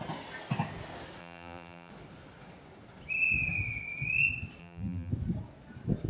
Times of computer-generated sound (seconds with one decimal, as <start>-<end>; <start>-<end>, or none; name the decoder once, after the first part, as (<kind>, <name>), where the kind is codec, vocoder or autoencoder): 1.2-1.9 (vocoder, BigVGAN v2); 4.6-5.1